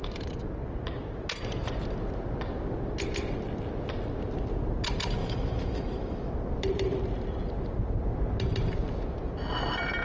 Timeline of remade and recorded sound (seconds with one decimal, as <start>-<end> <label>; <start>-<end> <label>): 0.0-5.2 recorded; 5.2-6.3 remade; 6.3-10.0 recorded